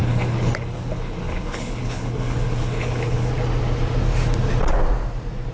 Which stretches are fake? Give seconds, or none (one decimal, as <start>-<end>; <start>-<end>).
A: 0.0-3.3